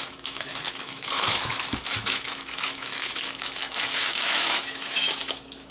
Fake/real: fake